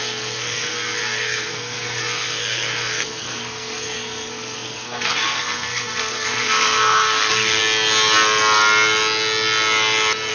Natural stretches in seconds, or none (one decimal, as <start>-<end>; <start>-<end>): 7.6-10.3